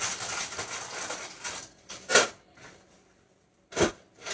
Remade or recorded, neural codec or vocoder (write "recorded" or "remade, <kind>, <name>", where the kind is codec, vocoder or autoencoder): recorded